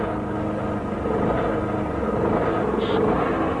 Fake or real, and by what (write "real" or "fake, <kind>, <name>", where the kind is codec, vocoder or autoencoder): real